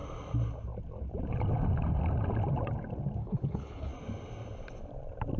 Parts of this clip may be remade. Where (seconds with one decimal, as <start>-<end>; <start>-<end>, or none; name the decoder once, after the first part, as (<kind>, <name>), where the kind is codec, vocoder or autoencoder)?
3.2-3.9 (codec, HILCodec)